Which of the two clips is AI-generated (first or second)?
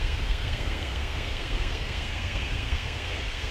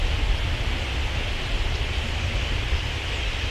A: first